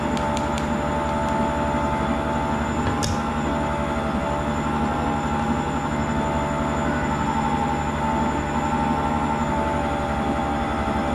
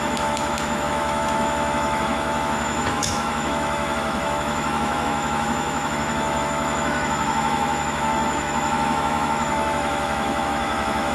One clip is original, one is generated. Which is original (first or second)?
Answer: first